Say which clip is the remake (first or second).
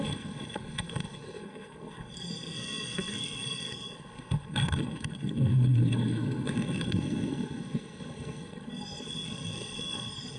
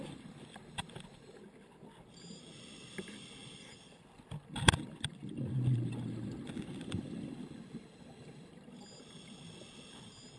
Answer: first